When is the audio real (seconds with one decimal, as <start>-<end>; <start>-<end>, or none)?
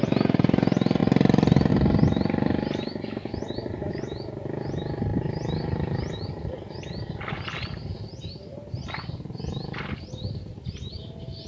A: 0.0-11.5